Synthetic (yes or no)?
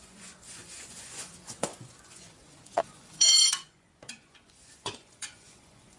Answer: yes